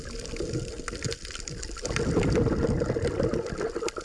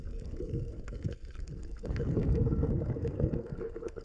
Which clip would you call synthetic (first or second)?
second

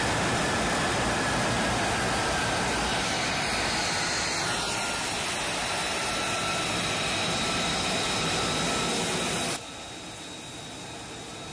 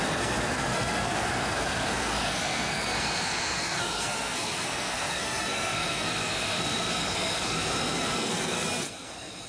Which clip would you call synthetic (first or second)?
second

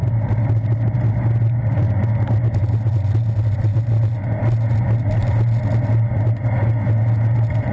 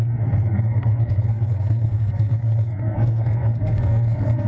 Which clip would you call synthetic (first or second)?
second